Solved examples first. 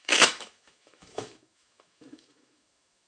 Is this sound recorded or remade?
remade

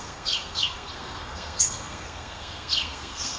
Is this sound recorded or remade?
remade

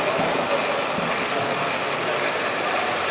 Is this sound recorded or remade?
recorded